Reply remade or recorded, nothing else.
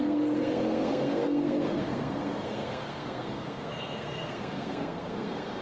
remade